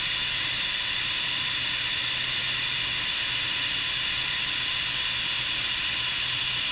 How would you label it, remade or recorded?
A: recorded